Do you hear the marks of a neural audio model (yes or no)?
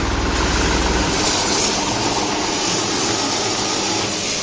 no